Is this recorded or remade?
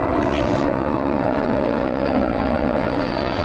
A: remade